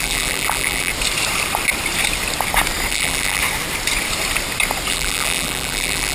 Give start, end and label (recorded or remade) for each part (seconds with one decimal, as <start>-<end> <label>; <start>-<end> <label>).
0.0-0.9 remade; 0.9-2.9 recorded; 2.9-3.4 remade; 3.4-4.9 recorded; 4.9-6.1 remade